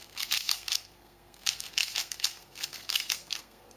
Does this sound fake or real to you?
fake